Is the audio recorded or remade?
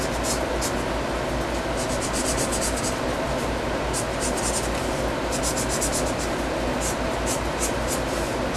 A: recorded